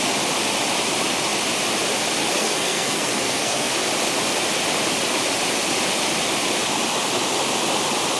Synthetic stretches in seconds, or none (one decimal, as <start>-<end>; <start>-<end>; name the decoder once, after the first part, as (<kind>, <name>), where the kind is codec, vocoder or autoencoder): 2.2-3.7 (codec, SNAC)